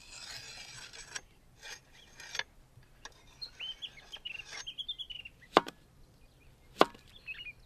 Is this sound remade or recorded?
recorded